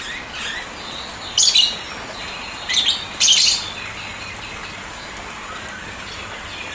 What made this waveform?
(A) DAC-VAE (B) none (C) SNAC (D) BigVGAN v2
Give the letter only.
B